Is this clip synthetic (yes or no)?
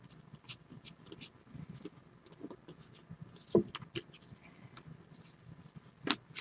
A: no